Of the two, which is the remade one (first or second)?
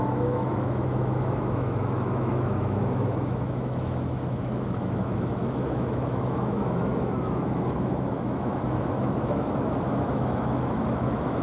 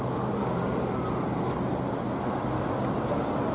first